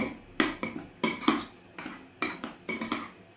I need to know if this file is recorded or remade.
recorded